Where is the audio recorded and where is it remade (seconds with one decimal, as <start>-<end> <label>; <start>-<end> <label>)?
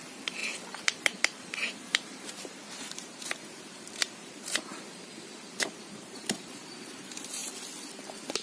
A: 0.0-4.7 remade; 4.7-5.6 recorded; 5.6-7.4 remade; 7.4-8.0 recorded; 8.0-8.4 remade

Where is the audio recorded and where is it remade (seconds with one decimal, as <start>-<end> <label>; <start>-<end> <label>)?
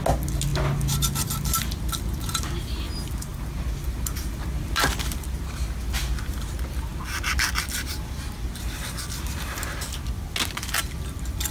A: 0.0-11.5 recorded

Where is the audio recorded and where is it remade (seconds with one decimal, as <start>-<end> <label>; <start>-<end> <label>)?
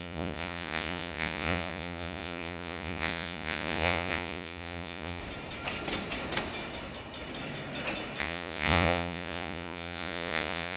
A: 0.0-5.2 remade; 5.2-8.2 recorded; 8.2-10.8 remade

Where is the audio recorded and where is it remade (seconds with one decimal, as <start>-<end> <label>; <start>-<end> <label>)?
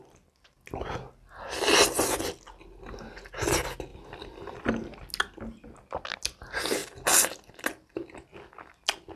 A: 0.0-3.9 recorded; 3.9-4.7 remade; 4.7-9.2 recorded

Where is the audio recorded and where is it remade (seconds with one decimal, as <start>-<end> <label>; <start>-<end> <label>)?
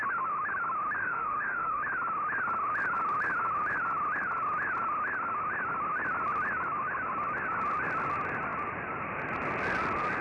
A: 0.0-1.0 recorded; 1.0-1.8 remade; 1.8-10.2 recorded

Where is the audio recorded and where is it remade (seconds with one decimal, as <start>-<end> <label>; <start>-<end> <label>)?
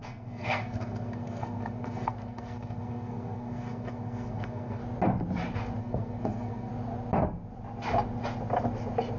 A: 0.0-4.8 remade; 4.8-5.8 recorded; 5.8-6.7 remade; 6.7-9.2 recorded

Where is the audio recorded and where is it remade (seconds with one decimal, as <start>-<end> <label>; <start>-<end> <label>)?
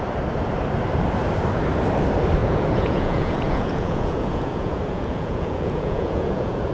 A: 0.0-2.4 recorded; 2.4-6.7 remade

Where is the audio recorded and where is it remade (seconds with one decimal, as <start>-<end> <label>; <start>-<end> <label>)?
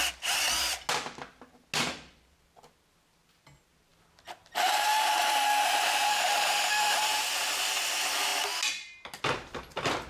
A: 0.0-6.1 recorded; 6.1-7.1 remade; 7.1-10.1 recorded